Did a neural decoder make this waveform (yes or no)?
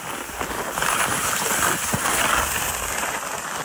no